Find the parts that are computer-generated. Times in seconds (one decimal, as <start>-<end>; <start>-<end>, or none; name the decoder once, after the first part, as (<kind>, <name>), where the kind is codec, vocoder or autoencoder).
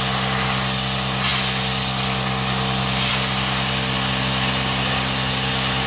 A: none